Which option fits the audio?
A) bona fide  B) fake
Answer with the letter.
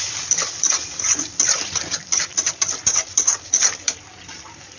B